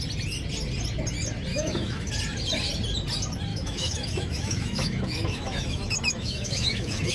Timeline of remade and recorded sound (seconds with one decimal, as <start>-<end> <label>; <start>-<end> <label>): 0.0-1.5 recorded; 1.5-2.1 remade; 2.1-3.5 recorded; 3.5-7.1 remade